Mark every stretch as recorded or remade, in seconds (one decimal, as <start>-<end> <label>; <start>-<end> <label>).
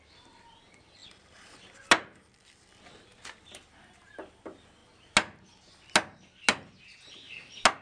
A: 0.0-7.8 recorded